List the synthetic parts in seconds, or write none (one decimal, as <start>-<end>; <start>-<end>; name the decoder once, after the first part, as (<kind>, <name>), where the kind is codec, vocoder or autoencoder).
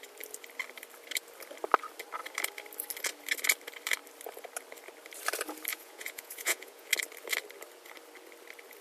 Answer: 5.7-6.9 (vocoder, Vocos)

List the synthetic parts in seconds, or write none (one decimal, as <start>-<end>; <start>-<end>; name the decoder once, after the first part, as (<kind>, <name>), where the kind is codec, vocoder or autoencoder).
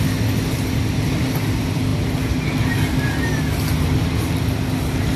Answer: none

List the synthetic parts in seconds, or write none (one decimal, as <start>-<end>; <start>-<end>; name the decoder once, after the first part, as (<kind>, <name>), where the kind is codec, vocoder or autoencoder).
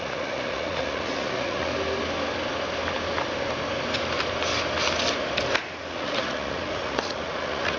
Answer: 0.0-1.7 (vocoder, Vocos); 5.9-7.8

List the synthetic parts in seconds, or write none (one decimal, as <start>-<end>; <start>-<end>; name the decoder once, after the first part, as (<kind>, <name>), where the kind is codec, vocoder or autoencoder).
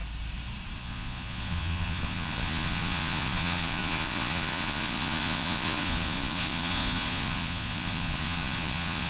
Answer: 0.8-9.1 (vocoder, Vocos)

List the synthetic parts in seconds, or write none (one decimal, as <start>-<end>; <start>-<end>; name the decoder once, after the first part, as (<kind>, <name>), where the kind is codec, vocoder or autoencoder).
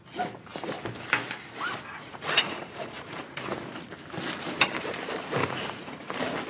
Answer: 1.9-3.9 (vocoder, Vocos); 5.4-6.1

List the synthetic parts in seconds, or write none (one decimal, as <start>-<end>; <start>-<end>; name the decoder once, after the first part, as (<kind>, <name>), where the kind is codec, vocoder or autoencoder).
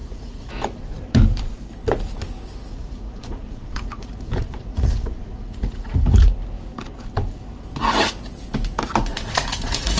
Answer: 0.0-0.5 (vocoder, Vocos); 2.7-6.3; 9.1-10.0